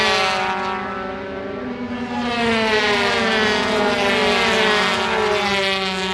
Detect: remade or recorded recorded